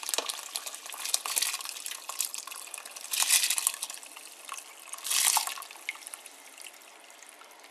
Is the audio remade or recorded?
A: recorded